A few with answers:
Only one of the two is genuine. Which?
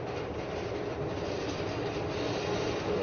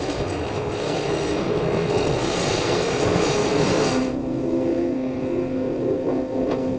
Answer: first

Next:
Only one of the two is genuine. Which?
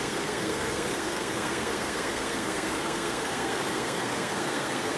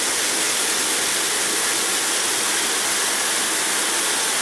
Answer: second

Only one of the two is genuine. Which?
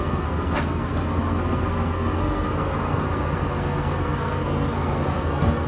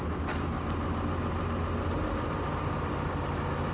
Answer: second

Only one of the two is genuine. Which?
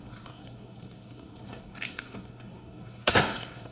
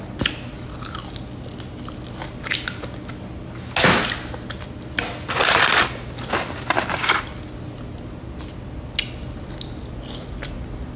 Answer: second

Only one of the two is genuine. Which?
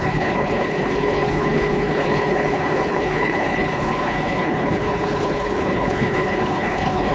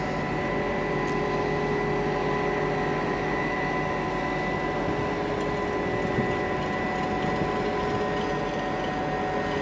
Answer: second